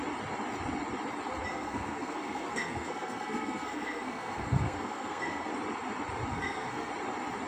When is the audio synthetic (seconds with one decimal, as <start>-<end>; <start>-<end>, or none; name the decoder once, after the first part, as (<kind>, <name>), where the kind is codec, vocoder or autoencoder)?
1.5-5.5 (codec, SNAC); 6.3-6.9